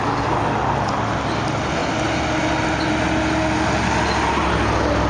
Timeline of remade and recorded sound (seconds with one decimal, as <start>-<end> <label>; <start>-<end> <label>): 0.0-5.1 recorded